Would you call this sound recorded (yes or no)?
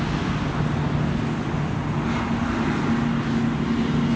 yes